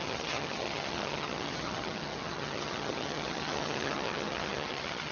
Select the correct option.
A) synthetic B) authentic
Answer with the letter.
A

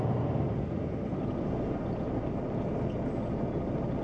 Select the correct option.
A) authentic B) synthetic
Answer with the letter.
A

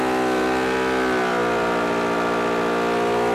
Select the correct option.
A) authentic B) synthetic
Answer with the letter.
A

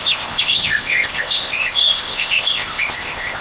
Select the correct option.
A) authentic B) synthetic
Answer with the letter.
B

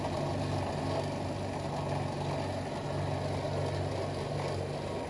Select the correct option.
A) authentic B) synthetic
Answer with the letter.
A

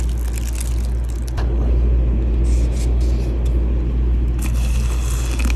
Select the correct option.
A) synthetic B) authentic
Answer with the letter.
B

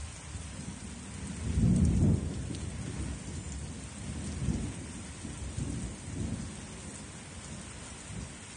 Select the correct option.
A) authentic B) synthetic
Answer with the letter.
A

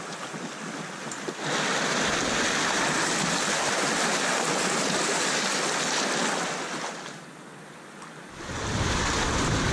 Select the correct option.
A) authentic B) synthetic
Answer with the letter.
A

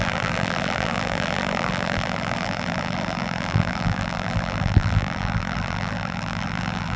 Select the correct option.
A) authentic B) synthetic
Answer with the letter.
B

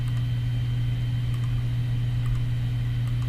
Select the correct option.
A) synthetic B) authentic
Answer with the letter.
B